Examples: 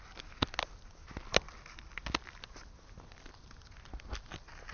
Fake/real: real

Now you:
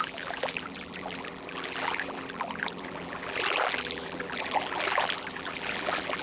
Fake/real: fake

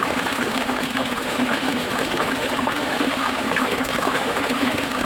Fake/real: fake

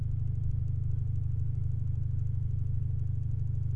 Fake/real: real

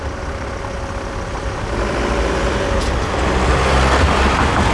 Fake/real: real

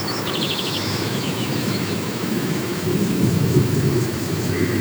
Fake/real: fake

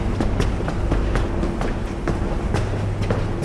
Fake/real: real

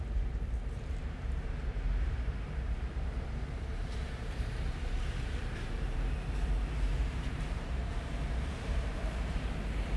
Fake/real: fake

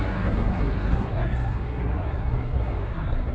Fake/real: fake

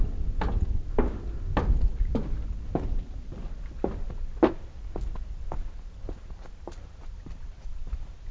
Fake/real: real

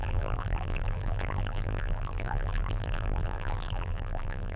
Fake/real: fake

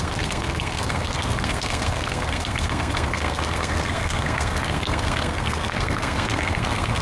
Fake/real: fake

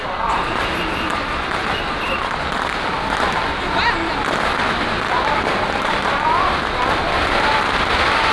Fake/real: real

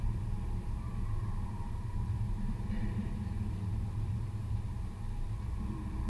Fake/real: fake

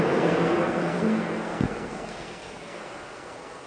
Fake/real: fake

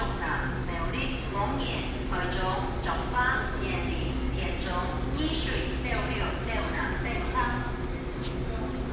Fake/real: real